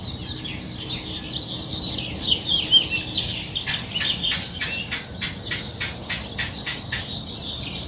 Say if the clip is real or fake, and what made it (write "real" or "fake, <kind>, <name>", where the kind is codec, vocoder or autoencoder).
real